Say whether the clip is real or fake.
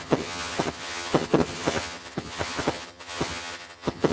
fake